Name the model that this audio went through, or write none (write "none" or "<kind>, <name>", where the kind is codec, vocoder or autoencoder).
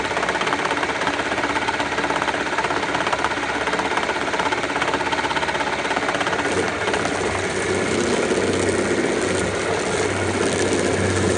none